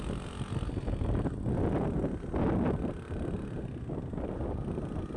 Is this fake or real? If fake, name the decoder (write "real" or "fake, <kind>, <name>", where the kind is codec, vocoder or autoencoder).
real